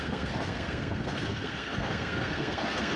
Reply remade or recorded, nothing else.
remade